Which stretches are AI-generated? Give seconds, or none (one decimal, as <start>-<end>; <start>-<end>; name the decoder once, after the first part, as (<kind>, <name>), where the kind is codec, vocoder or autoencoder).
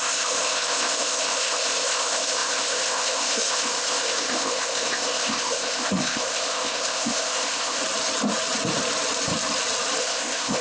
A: 0.0-7.8 (codec, ZipCodec); 10.0-10.6